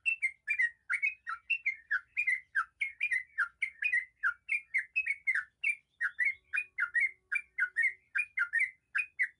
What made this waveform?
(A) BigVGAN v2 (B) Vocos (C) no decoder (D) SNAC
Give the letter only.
C